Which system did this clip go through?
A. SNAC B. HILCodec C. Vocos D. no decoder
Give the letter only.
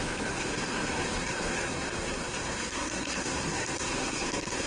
A